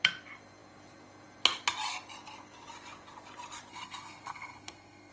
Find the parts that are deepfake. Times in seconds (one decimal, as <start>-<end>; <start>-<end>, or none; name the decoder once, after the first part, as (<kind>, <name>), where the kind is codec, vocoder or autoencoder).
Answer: 3.7-5.1 (codec, SNAC)